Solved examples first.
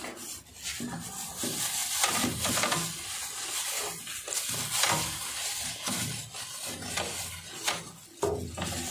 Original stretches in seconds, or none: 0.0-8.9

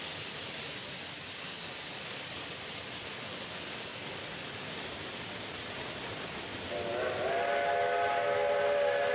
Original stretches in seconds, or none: 0.0-9.1